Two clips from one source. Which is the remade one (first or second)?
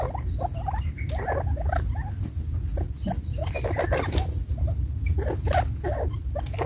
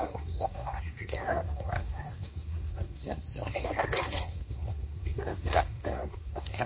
second